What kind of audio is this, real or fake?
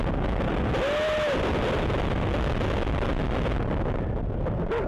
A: real